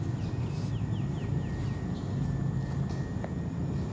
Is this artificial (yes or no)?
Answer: no